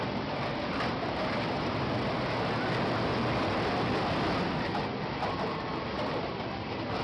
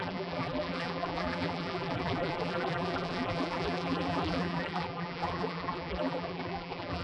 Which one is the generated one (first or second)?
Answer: second